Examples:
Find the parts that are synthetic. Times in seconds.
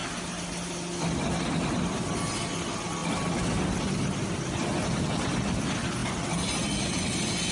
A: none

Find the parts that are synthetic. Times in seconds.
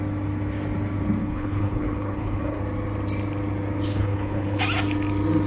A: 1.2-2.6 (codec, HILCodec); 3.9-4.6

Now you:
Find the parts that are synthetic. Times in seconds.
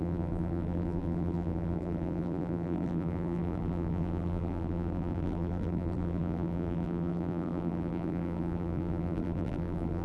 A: 0.0-10.0 (vocoder, BigVGAN v2)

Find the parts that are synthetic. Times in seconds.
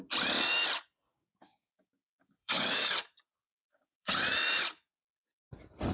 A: 1.1-2.9 (codec, DAC); 3.5-4.1